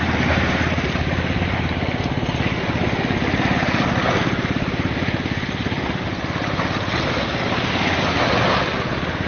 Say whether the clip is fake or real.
real